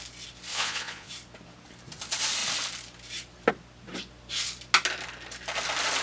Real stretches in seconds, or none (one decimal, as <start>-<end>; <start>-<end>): 0.0-0.5; 1.1-6.0